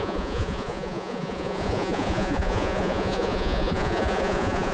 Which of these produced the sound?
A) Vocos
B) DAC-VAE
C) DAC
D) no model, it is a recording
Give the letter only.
A